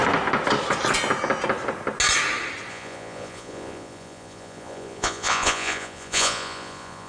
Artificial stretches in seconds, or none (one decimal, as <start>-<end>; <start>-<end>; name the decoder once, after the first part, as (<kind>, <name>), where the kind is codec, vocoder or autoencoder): 2.7-7.1 (vocoder, Vocos)